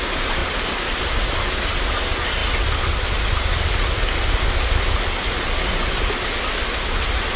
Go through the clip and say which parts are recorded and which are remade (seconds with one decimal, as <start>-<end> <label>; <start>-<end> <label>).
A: 0.0-7.4 recorded